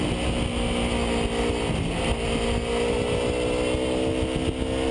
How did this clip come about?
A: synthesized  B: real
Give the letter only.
B